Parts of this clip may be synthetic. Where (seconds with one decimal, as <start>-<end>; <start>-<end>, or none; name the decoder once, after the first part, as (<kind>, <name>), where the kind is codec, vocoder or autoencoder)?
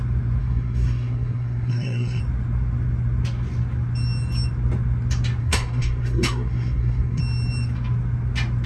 0.4-2.2 (codec, SNAC); 5.4-7.2